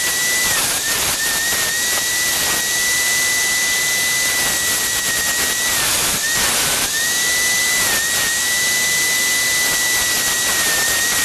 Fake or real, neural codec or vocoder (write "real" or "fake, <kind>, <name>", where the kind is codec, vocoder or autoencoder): real